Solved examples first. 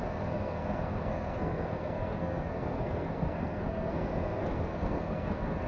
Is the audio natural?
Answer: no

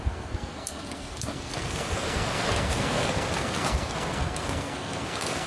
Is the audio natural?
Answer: no